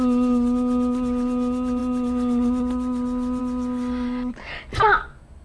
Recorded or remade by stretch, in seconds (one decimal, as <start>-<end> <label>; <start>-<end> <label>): 0.0-5.4 recorded